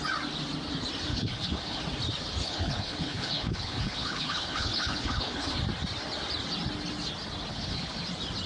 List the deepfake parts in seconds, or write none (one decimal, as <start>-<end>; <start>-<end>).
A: 1.1-1.8; 2.4-5.6; 7.5-8.0